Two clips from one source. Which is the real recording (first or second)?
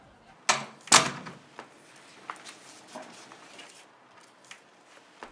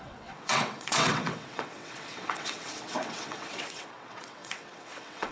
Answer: first